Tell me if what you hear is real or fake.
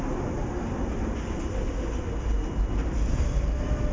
real